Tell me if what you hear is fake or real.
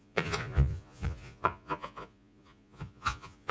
fake